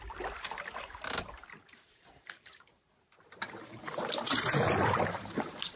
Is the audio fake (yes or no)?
yes